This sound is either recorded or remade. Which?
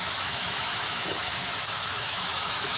remade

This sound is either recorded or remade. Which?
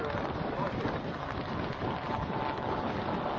recorded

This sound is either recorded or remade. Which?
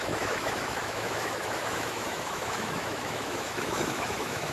remade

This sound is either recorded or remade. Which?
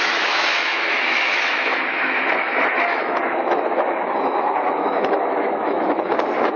remade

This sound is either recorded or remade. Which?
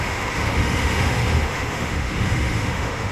remade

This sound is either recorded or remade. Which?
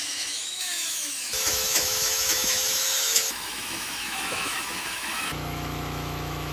remade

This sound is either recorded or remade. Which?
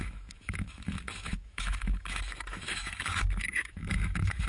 remade